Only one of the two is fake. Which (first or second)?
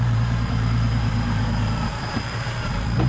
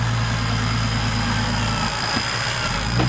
first